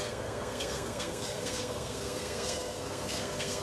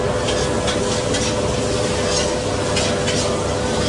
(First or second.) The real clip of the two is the second